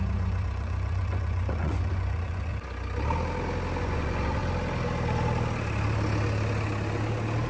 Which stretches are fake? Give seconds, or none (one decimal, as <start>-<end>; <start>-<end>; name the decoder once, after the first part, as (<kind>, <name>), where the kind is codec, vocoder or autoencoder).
0.0-2.5 (vocoder, Vocos); 3.8-4.4

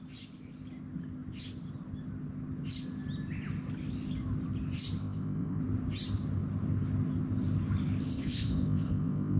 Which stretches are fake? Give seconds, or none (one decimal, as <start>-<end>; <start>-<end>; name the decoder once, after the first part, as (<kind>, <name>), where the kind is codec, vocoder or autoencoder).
5.0-5.6 (codec, ZipCodec); 8.1-9.4

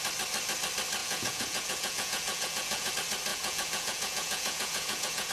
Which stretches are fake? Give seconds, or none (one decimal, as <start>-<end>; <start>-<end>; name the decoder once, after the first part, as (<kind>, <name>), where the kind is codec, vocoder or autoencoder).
1.0-2.9 (vocoder, Vocos); 3.3-5.3

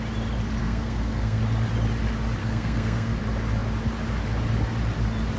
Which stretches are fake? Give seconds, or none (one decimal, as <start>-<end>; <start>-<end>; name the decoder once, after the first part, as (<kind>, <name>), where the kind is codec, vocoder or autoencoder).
0.6-1.4 (codec, SNAC); 2.4-3.2

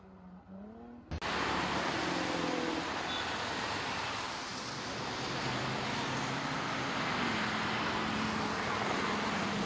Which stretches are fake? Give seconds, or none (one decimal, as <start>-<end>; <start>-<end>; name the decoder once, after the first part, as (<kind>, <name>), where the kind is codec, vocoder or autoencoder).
none